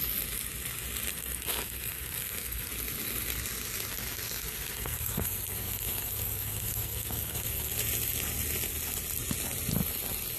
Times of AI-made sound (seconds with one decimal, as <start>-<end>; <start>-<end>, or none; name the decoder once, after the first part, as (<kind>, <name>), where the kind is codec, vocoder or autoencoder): 1.1-2.7 (codec, SNAC); 3.9-7.7